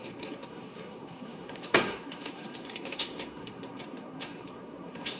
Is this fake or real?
fake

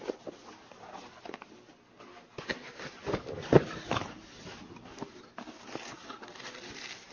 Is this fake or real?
real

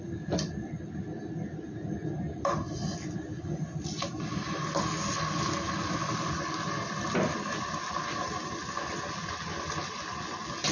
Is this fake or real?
real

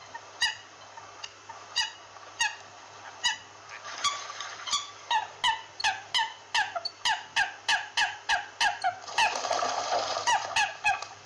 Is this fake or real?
real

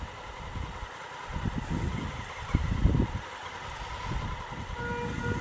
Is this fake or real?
real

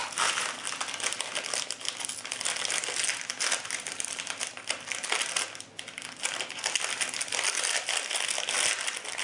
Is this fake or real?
real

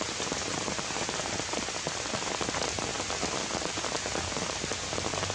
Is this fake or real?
real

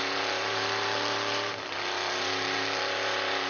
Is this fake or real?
fake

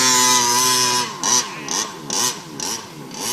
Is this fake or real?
real